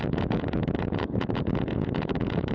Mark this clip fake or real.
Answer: fake